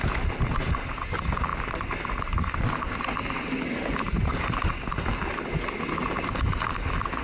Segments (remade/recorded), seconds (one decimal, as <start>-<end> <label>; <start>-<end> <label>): 0.0-7.2 recorded